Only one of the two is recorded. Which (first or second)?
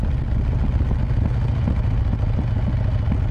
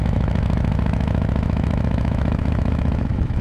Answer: first